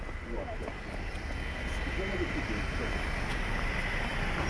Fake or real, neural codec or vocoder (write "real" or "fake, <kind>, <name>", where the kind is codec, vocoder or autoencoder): real